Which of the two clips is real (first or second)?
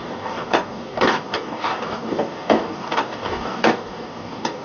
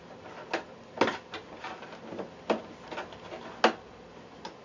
second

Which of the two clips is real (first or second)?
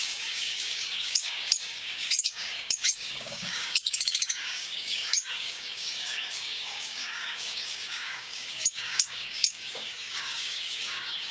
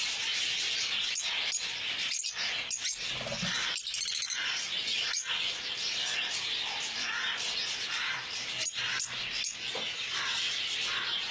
second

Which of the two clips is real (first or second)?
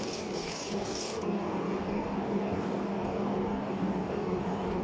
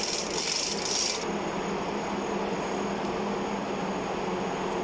second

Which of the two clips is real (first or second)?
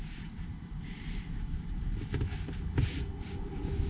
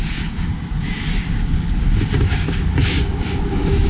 first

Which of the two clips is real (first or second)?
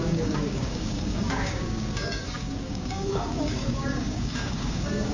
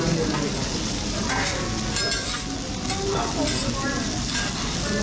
second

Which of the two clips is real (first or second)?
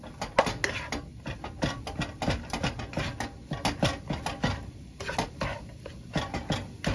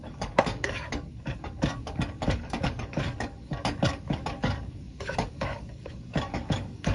first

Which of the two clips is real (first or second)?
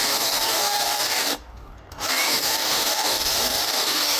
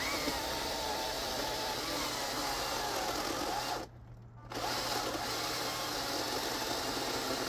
second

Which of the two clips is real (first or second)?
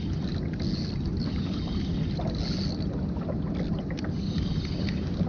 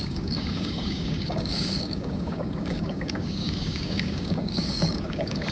first